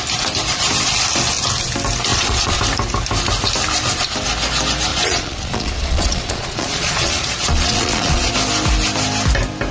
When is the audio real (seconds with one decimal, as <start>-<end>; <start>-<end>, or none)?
0.0-2.1; 2.6-4.9; 8.3-9.7